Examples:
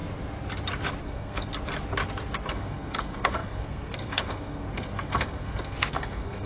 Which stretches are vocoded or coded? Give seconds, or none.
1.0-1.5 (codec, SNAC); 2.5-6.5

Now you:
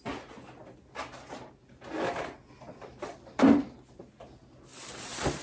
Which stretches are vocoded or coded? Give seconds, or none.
2.9-4.0 (vocoder, BigVGAN v2); 4.7-5.4

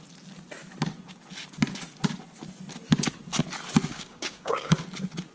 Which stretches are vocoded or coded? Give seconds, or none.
3.9-4.7 (codec, DAC)

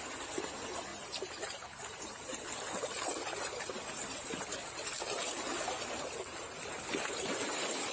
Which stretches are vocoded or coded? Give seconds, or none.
4.5-5.5 (vocoder, BigVGAN v2)